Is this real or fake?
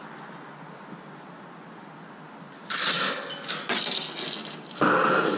real